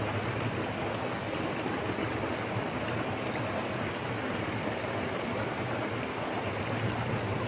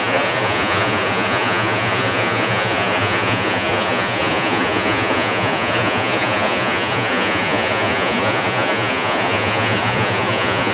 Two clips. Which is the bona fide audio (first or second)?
first